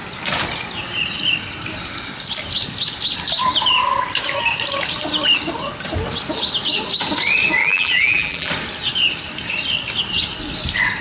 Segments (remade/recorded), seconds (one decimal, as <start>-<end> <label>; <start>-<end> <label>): 0.0-7.6 recorded; 7.6-8.5 remade; 8.5-11.0 recorded